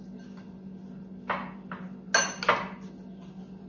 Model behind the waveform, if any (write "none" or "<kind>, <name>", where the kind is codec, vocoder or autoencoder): none